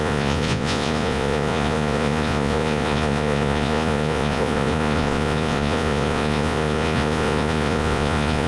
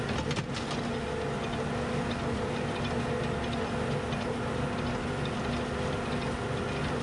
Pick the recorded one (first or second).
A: second